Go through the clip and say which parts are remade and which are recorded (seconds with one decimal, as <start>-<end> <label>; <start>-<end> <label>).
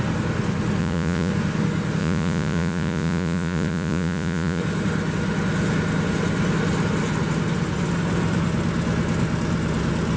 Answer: 0.0-0.8 recorded; 0.8-1.3 remade; 1.3-2.0 recorded; 2.0-4.6 remade; 4.6-10.2 recorded